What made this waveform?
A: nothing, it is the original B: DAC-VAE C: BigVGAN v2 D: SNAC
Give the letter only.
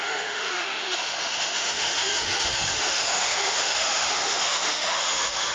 B